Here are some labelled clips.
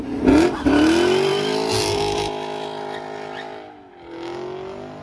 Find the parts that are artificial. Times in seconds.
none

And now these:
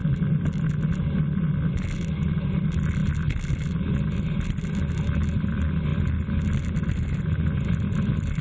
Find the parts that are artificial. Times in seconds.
0.0-0.8

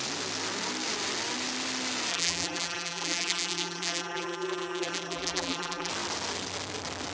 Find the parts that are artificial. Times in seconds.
2.1-5.9

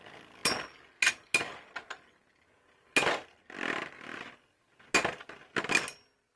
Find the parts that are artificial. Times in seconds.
4.1-4.6

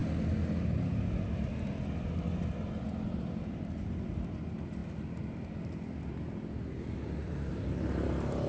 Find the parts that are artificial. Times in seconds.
3.4-4.8; 7.5-8.5

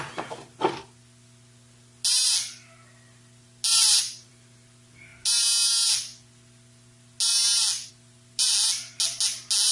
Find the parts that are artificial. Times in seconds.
3.7-4.3

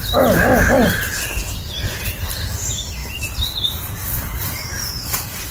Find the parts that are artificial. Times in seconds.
0.8-2.0; 3.0-5.5

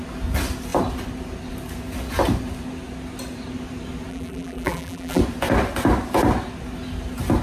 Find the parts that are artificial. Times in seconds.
4.1-5.2